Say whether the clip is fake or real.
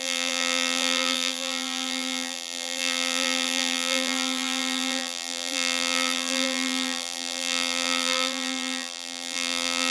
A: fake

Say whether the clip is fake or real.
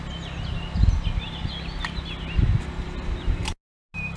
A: real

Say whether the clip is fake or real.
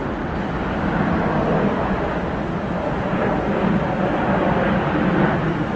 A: real